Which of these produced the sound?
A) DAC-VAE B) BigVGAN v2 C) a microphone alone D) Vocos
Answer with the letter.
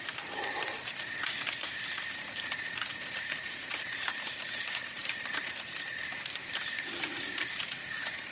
B